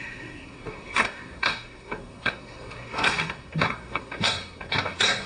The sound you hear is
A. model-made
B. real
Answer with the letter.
A